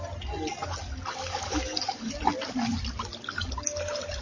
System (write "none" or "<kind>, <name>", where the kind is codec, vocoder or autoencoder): none